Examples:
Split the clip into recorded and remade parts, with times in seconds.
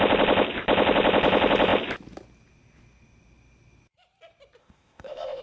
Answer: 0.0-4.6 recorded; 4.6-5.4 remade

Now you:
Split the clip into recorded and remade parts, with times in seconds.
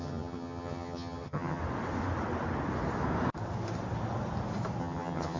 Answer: 0.0-1.6 remade; 1.6-4.8 recorded; 4.8-5.4 remade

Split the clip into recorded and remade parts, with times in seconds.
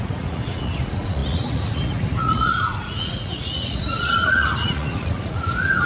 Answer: 0.0-5.9 remade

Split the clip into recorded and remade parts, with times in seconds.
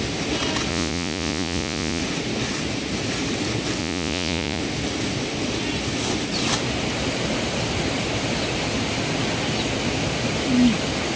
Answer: 0.0-0.7 recorded; 0.7-2.0 remade; 2.0-3.8 recorded; 3.8-4.6 remade; 4.6-11.2 recorded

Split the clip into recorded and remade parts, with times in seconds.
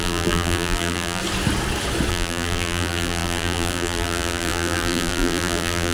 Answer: 0.0-1.2 remade; 1.2-2.1 recorded; 2.1-5.9 remade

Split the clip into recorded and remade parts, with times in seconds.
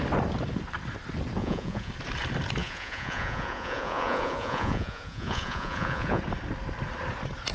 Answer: 0.0-1.4 recorded; 1.4-1.9 remade; 1.9-2.6 recorded; 2.6-6.2 remade; 6.2-7.5 recorded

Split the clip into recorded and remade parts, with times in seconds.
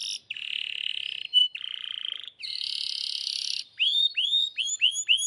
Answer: 0.0-5.3 recorded